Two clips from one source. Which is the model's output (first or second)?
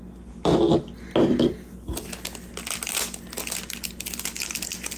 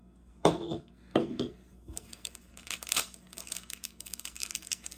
second